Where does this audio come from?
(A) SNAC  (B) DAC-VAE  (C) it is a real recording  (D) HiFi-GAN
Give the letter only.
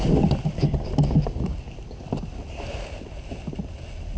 C